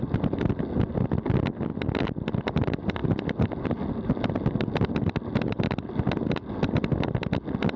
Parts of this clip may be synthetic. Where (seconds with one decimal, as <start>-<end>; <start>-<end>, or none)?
none